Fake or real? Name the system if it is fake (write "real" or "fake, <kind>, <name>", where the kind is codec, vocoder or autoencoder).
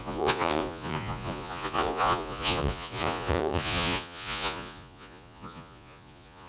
fake, vocoder, Vocos